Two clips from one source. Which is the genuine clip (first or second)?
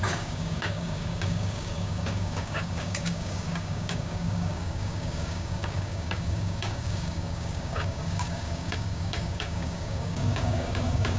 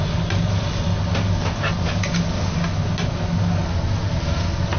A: second